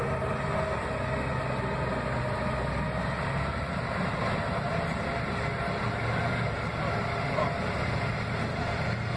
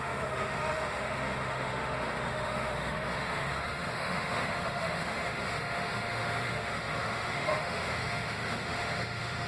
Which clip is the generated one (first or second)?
second